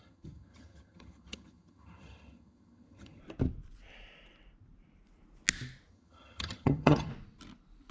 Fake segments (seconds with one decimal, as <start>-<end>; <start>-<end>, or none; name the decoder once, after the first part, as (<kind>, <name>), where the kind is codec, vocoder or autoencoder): 0.0-3.2 (vocoder, HiFi-GAN); 5.9-7.1